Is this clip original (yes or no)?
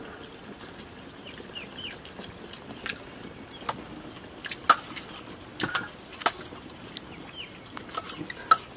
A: yes